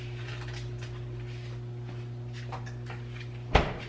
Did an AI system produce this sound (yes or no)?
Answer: no